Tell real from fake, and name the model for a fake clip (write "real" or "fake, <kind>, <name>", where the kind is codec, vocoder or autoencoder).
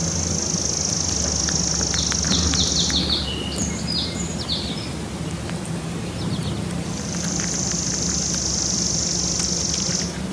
real